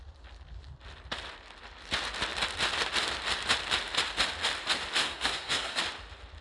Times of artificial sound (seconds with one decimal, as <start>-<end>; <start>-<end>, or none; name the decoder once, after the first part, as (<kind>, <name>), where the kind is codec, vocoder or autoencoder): 5.0-5.8 (codec, SNAC)